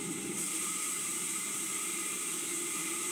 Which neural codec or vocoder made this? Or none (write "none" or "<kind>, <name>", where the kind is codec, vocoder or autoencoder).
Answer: vocoder, BigVGAN v2